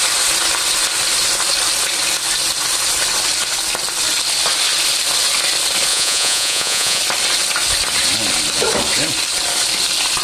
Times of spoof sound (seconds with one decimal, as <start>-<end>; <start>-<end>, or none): 5.9-7.0